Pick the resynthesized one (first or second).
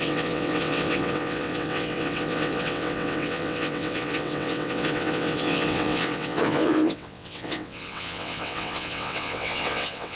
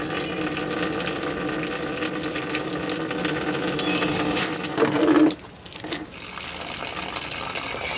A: first